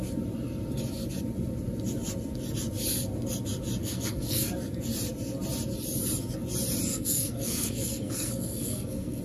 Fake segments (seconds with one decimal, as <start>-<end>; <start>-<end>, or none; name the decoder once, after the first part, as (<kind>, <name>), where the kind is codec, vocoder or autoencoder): 3.8-4.5 (codec, SNAC); 6.9-9.2